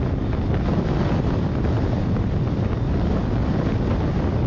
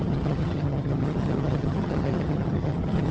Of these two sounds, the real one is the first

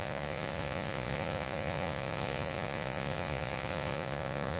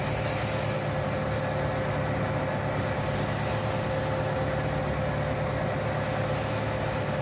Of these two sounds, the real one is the second